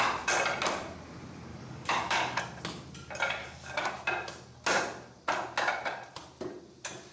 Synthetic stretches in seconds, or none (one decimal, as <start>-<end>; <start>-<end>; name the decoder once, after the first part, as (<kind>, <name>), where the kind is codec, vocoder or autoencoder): 1.5-2.4 (codec, DAC); 3.4-3.9